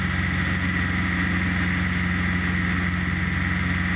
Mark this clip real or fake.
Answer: real